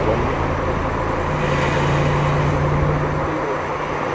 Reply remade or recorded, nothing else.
recorded